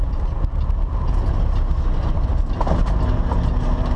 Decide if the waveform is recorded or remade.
recorded